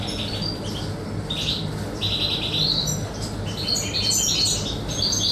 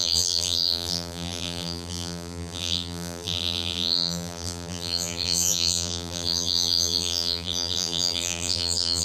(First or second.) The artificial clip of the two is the second